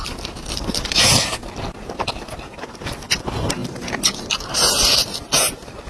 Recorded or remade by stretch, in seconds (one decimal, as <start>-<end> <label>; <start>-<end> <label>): 0.0-3.6 recorded; 3.6-4.7 remade; 4.7-5.9 recorded